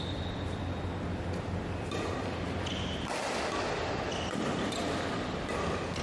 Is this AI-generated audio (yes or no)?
no